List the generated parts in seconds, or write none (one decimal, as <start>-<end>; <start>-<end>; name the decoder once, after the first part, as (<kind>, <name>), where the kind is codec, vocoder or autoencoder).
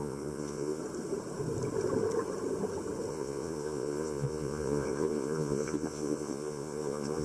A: 0.0-0.8 (vocoder, Vocos); 3.1-7.2